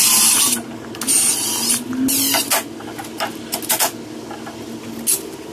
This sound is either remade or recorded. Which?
recorded